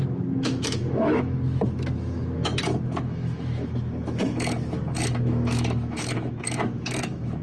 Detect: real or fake fake